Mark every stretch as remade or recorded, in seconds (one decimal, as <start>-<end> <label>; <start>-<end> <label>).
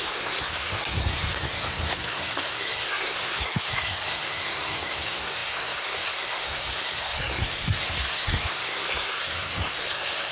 0.0-10.3 remade